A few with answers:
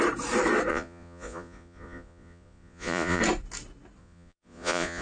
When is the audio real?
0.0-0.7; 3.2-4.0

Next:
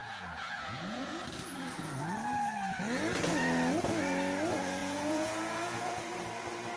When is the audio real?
1.2-4.8; 6.1-6.8

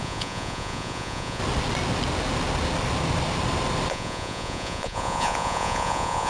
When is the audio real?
1.4-3.9

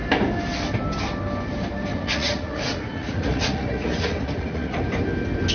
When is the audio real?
0.0-1.9; 4.8-5.5

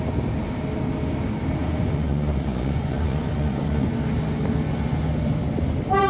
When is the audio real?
0.0-1.6; 3.9-6.1